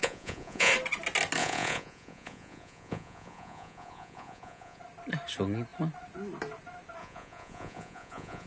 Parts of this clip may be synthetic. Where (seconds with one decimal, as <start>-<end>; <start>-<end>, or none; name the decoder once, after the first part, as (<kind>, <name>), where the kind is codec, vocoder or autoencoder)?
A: 0.0-0.7 (vocoder, Vocos); 1.4-4.8; 7.0-8.5